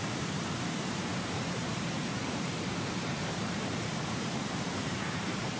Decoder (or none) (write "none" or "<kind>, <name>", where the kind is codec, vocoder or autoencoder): vocoder, BigVGAN v2